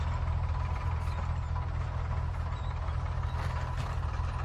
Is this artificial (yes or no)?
no